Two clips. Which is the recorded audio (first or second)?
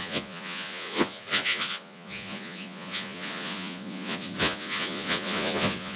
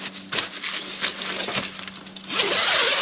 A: second